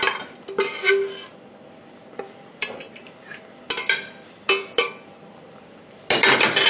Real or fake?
real